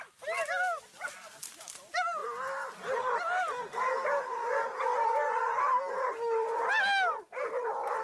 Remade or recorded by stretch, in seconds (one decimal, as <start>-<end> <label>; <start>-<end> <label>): 0.0-8.0 recorded